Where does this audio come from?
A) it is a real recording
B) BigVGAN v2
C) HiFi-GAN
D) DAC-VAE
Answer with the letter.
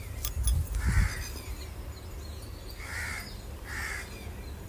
A